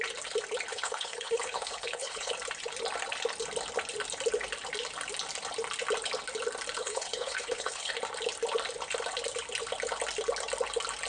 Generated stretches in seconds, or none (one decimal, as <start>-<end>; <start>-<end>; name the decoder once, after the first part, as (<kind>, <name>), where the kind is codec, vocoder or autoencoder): 0.7-2.3 (codec, HILCodec); 6.8-7.9